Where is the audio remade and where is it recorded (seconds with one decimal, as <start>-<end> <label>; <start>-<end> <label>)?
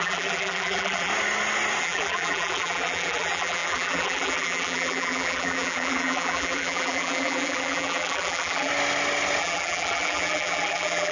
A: 0.0-1.1 remade; 1.1-1.8 recorded; 1.8-8.7 remade; 8.7-9.4 recorded; 9.4-11.1 remade